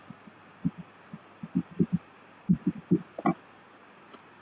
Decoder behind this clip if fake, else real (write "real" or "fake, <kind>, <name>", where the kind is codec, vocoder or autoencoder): real